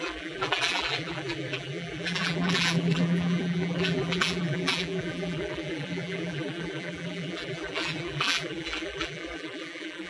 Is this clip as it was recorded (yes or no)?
no